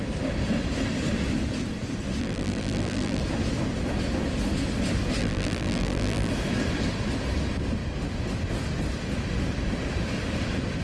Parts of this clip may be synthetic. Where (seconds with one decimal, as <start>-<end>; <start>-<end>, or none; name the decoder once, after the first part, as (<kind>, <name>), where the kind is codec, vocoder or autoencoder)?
2.2-3.2 (vocoder, BigVGAN v2); 5.2-6.3